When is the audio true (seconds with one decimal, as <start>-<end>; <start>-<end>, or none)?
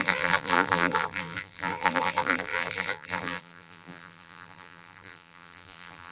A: none